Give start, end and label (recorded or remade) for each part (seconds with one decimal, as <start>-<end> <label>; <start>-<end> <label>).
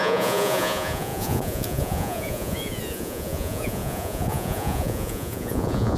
0.0-6.0 remade